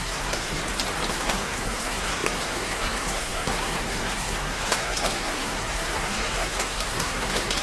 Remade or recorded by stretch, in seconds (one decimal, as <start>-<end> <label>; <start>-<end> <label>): 0.0-0.6 remade; 0.6-1.1 recorded; 1.1-7.6 remade